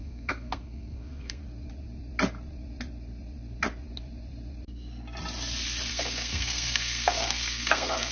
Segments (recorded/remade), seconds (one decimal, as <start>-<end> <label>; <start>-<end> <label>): 0.0-1.4 remade; 1.4-5.9 recorded; 5.9-8.1 remade